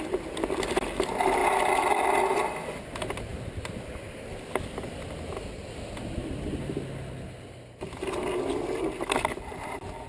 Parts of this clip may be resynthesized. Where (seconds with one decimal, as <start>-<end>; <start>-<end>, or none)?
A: none